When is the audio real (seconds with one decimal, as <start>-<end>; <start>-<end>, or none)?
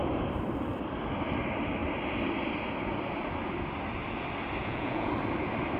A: 0.0-4.6; 5.1-5.8